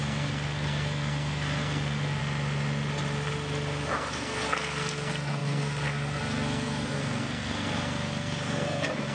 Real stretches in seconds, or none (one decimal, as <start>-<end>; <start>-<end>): 2.2-3.9

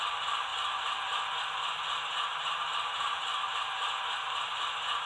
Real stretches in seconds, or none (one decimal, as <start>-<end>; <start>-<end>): 0.0-0.5; 1.2-2.3; 4.6-5.1

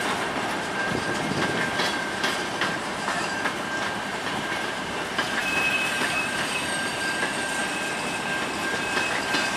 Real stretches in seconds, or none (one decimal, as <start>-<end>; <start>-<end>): 7.6-8.7

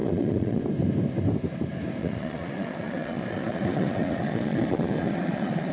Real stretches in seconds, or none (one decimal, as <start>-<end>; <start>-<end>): 0.6-2.0

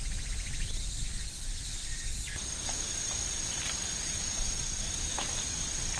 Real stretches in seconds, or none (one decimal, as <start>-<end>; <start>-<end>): 0.0-6.0

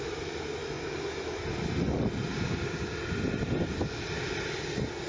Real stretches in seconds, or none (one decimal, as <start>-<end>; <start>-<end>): 0.0-0.6; 1.4-5.1

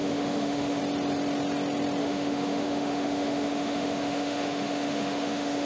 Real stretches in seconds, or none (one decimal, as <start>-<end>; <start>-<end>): 0.8-2.0